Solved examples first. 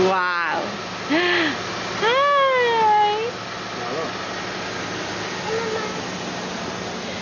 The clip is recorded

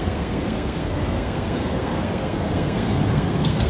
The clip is remade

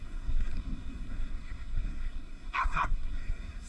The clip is remade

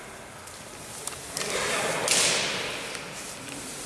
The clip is recorded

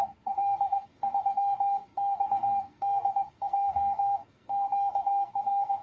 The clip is remade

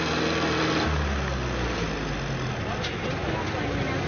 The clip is recorded